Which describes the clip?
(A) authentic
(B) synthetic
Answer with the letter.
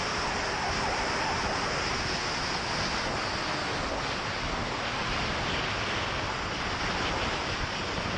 A